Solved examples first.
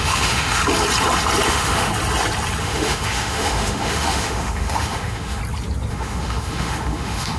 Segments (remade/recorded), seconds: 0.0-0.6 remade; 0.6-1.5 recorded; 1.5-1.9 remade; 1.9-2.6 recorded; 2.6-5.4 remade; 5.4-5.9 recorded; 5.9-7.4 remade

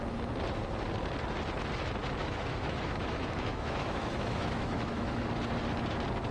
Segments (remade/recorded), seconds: 0.0-2.2 recorded; 2.2-5.3 remade; 5.3-6.3 recorded

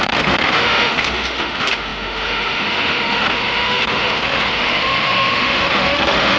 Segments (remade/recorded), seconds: 0.0-6.4 remade